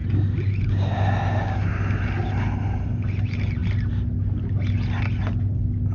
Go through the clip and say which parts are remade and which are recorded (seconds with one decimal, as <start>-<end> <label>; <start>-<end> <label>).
0.0-5.9 recorded